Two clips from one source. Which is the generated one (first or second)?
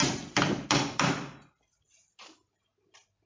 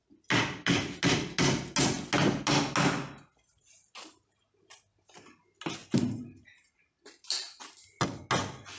first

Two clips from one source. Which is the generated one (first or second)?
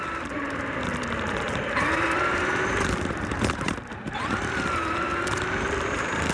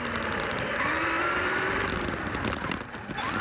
first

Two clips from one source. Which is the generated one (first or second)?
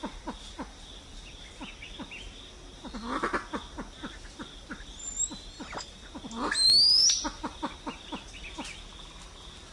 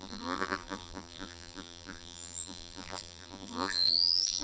second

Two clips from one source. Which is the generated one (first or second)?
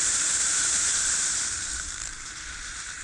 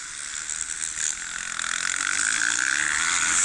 first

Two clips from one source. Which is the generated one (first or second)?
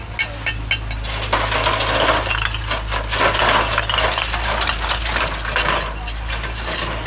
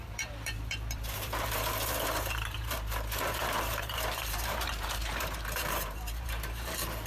second